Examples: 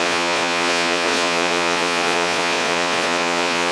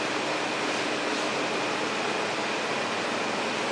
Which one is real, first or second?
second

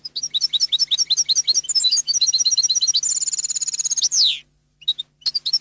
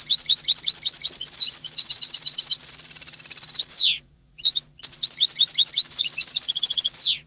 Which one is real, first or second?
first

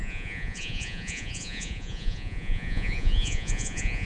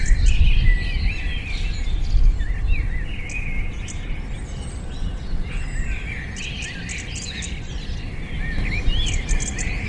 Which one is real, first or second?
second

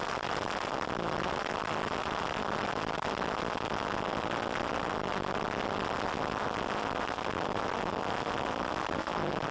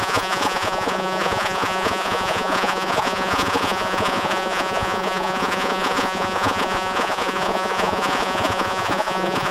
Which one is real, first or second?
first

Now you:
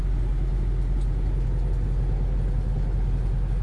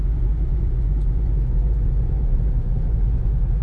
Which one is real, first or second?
first